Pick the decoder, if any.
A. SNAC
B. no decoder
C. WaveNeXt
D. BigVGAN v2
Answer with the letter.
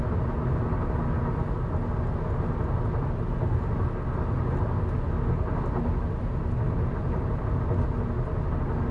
B